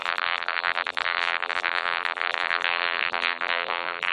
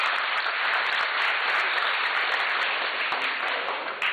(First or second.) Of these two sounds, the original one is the second